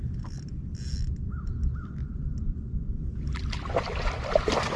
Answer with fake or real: real